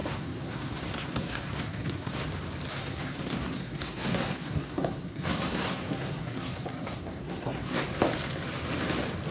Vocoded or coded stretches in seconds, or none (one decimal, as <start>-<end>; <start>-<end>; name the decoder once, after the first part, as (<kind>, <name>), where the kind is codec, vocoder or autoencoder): 0.0-2.2 (codec, SNAC); 2.7-7.8